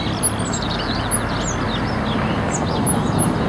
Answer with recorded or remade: recorded